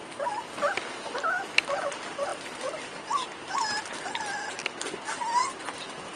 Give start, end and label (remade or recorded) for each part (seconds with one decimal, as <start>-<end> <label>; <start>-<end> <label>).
0.0-2.3 recorded; 2.3-3.8 remade; 3.8-4.6 recorded; 4.6-5.6 remade; 5.6-6.2 recorded